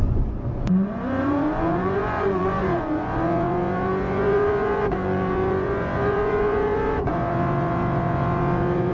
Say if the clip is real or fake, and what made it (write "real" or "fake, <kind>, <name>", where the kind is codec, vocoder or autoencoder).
fake, vocoder, Vocos